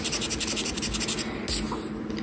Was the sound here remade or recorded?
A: recorded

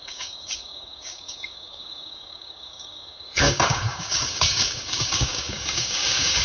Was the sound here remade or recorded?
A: remade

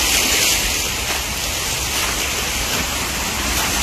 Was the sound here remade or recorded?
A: recorded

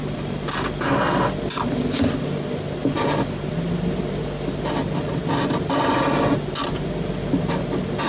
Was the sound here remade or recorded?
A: recorded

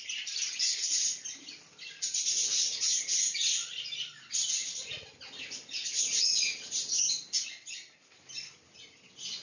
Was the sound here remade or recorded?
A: recorded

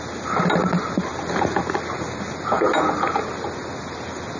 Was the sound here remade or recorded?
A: recorded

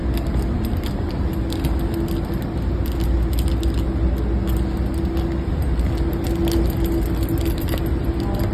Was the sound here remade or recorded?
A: recorded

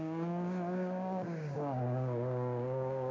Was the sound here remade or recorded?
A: remade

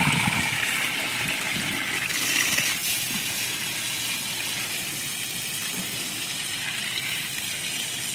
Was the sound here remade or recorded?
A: recorded